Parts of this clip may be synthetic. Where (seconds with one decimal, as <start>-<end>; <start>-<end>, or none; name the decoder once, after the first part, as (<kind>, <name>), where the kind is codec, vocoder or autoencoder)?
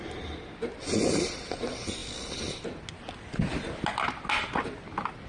none